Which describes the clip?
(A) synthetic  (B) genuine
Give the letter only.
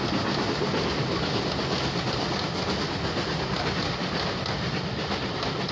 B